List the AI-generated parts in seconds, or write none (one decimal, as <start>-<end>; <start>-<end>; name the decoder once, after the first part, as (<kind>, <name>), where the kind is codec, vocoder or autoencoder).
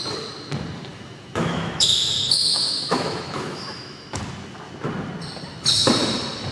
0.9-4.2 (autoencoder, DAC-VAE)